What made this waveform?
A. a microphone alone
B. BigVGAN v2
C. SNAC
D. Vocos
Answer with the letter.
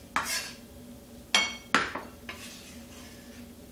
A